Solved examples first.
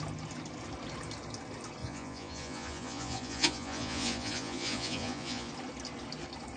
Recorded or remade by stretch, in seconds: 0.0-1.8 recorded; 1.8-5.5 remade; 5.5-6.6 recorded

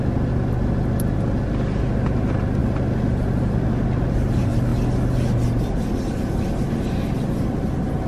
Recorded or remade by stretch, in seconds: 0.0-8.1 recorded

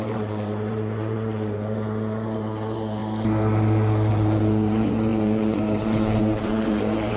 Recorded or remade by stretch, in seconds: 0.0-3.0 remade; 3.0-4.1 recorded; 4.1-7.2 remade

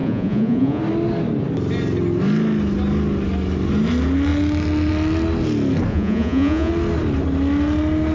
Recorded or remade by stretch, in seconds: 0.0-0.8 remade; 0.8-5.9 recorded; 5.9-6.7 remade; 6.7-8.1 recorded